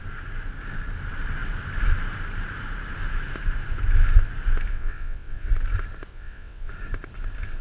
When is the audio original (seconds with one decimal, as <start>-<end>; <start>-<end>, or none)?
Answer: 0.0-4.7; 5.5-6.1; 6.7-7.6